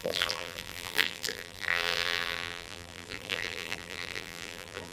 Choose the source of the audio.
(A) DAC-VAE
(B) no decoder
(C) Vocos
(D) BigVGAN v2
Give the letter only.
D